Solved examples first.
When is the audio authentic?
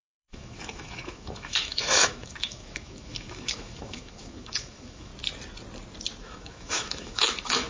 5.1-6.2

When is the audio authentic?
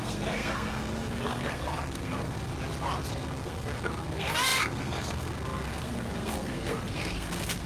2.5-3.1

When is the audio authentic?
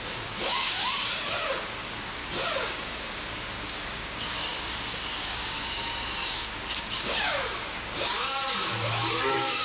2.2-2.7